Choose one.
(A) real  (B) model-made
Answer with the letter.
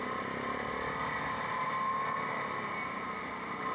A